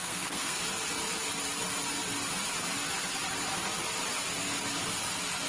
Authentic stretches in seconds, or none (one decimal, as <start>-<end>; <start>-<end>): 0.6-5.5